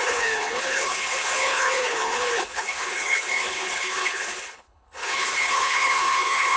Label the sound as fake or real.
fake